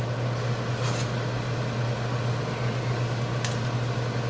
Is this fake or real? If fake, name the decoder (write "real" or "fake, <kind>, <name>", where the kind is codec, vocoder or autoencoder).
real